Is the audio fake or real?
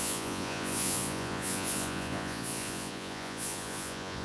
fake